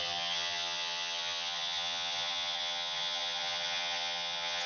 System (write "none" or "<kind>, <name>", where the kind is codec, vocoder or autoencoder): vocoder, HiFi-GAN